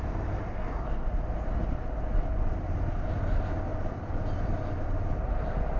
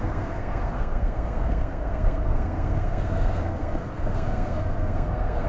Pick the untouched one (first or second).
first